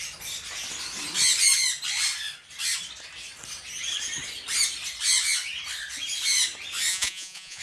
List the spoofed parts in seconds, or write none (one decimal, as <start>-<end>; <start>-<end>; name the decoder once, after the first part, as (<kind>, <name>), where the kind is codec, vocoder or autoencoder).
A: 6.9-7.6 (vocoder, Vocos)